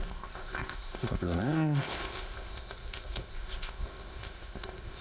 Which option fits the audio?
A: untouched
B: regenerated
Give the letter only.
B